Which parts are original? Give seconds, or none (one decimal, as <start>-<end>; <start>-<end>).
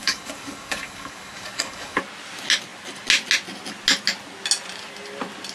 2.0-5.5